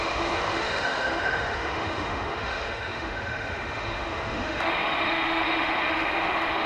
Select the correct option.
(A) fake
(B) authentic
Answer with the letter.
A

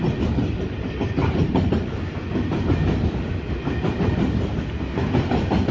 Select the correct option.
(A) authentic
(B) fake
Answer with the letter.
A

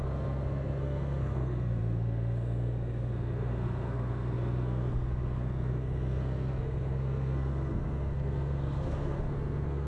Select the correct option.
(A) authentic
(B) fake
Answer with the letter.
B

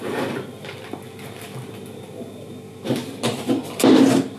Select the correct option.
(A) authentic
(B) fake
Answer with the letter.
A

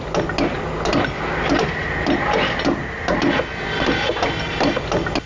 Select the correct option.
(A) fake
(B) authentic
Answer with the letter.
B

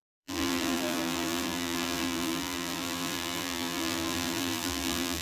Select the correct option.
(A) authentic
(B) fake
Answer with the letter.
B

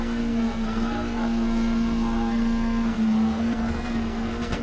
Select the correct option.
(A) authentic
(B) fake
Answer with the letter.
B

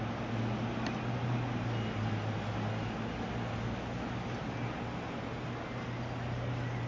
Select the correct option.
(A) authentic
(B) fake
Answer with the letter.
A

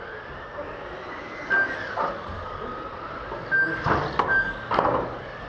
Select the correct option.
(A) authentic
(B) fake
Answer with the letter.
A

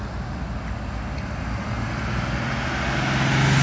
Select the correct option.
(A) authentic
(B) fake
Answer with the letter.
A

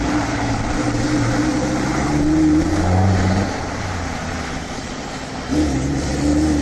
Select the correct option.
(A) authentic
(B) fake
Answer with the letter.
B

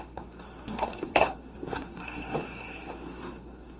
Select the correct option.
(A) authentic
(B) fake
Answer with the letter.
B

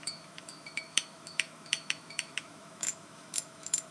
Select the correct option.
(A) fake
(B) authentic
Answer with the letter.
A